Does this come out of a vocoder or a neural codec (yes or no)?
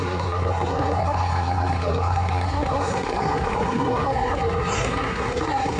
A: yes